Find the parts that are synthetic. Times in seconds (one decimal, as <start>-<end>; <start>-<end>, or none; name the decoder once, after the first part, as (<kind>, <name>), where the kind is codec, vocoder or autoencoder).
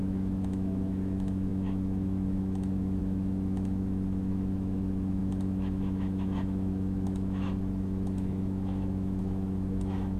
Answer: 0.0-10.2 (autoencoder, DAC-VAE)